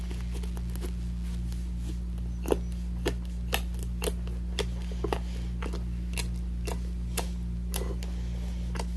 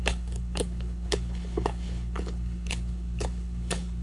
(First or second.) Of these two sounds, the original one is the first